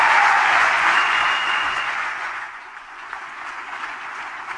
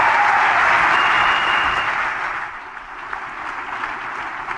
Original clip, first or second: second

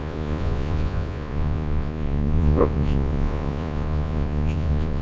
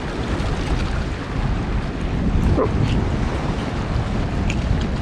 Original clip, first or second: second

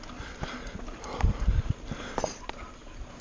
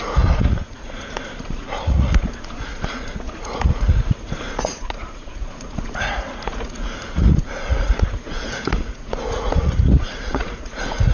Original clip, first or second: first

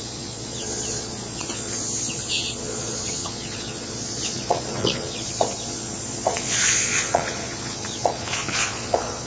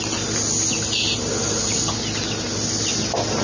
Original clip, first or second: second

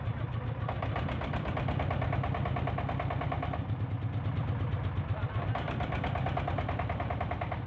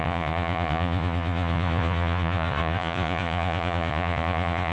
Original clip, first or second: first